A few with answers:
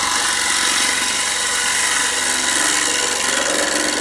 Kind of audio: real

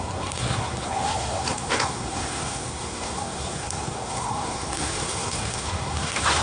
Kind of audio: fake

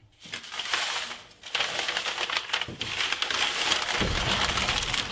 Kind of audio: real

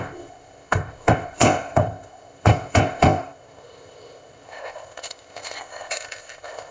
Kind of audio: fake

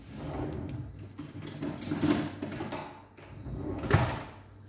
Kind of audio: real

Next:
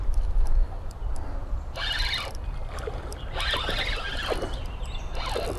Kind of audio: real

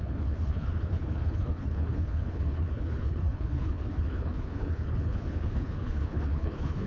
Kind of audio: fake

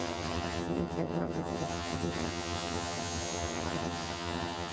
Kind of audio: fake